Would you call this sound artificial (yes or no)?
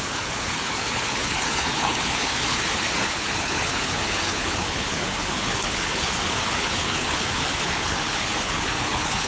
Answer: yes